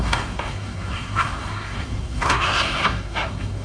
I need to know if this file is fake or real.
fake